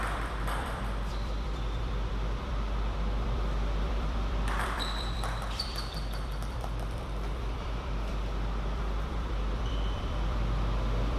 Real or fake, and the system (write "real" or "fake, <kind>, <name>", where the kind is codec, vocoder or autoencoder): fake, vocoder, BigVGAN v2